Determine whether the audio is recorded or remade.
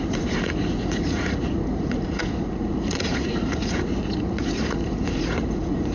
remade